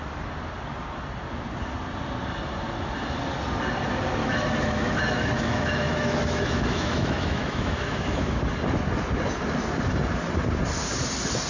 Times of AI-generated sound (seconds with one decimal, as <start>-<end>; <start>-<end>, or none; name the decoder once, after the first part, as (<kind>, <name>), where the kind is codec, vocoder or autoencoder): 4.2-8.4 (autoencoder, DAC-VAE)